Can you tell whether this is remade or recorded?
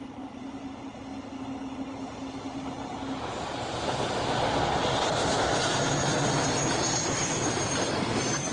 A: recorded